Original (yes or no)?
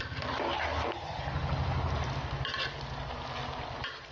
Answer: yes